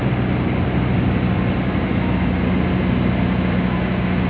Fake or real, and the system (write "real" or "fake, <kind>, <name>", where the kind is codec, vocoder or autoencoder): real